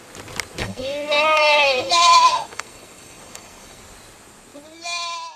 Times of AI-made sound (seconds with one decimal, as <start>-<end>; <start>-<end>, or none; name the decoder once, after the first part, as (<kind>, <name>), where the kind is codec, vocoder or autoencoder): 0.6-3.8 (codec, SNAC)